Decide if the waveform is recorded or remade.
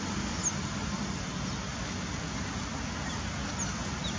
recorded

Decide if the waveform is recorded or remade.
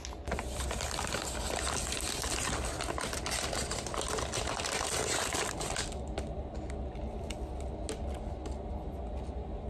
recorded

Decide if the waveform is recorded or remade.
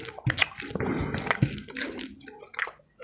recorded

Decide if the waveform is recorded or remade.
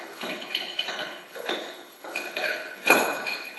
remade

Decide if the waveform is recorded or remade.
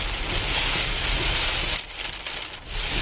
recorded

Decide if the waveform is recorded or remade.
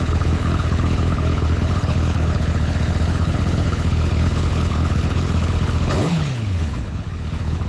remade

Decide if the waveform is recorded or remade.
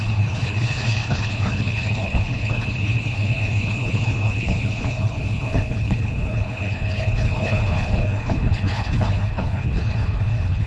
remade